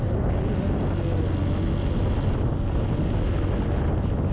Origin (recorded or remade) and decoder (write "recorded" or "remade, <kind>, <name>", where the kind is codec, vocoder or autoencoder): recorded